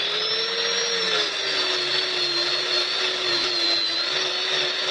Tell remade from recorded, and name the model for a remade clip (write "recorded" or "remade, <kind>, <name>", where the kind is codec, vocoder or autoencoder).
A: recorded